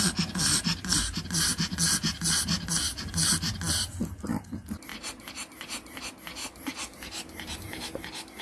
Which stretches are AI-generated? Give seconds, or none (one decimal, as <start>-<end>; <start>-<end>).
4.9-6.0; 6.4-8.4

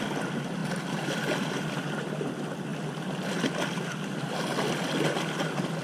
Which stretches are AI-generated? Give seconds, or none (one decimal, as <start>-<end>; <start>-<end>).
none